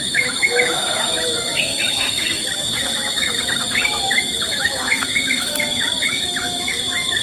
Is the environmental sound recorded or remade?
remade